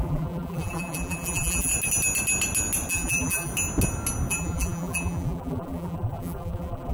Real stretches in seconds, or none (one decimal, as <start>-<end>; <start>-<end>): 1.7-2.9; 3.5-4.3

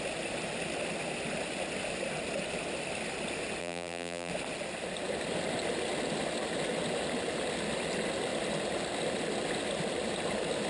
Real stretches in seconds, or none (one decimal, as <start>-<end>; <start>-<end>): 0.0-3.6; 4.3-10.7

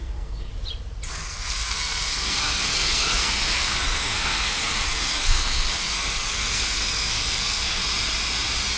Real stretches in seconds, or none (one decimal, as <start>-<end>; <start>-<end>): 0.5-1.1; 7.8-8.8

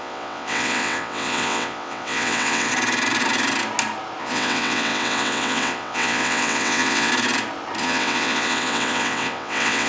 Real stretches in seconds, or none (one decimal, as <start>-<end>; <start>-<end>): 2.7-4.2; 7.1-7.8